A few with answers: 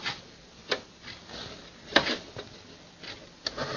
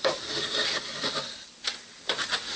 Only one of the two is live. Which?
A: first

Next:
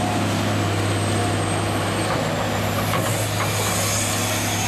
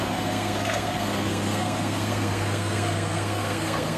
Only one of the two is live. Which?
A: first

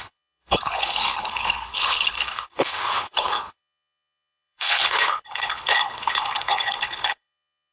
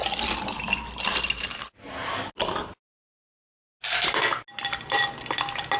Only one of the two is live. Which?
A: second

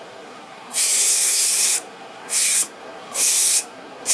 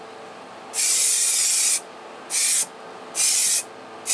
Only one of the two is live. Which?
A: second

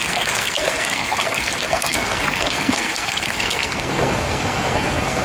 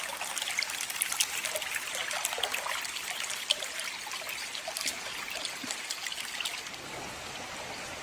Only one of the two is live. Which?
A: second